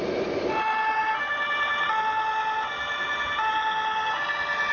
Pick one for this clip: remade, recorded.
recorded